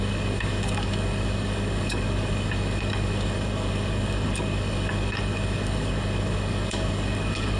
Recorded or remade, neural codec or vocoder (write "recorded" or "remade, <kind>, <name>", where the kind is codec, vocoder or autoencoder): remade, codec, DAC